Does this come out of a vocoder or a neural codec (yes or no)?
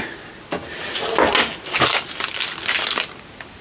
no